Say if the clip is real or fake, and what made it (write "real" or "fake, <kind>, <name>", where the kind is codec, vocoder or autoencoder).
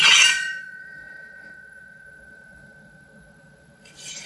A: fake, vocoder, Vocos